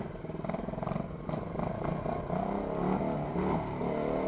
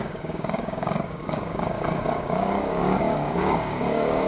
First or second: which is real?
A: first